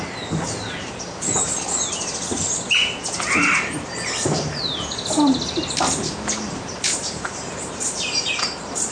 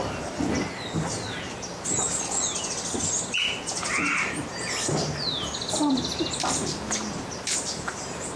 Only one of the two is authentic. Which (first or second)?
second